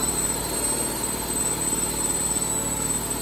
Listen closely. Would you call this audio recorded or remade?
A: recorded